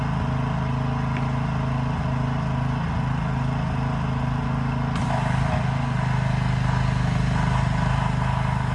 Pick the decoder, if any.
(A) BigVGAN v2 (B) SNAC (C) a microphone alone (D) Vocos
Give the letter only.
C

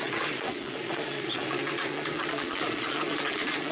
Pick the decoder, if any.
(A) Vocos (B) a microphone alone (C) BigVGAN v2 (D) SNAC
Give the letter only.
A